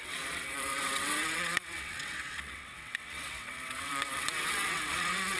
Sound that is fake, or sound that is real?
fake